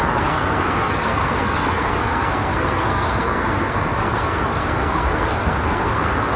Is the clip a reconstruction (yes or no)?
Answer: yes